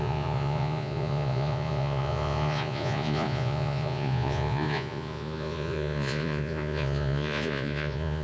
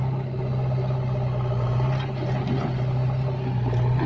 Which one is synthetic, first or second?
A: first